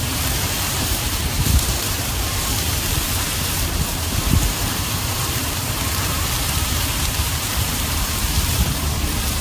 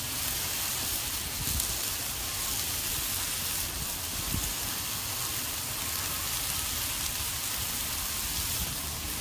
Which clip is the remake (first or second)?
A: first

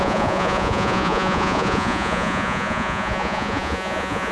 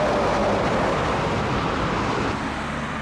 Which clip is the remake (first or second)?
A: first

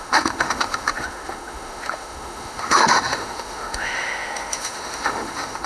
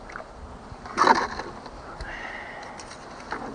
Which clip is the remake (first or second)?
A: first